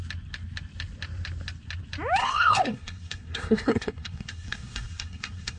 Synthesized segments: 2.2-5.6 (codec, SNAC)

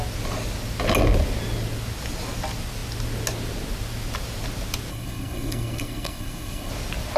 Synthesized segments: 4.9-6.7 (codec, SNAC)

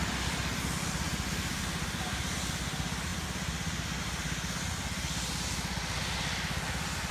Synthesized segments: none

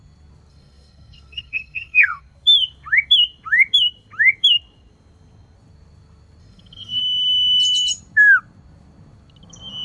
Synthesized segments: 0.5-2.2 (codec, SNAC); 6.4-7.0

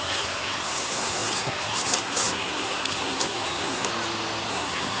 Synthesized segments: 0.0-3.9 (codec, SNAC); 4.5-5.0

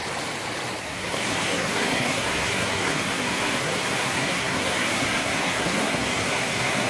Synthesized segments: 0.8-6.9 (codec, SNAC)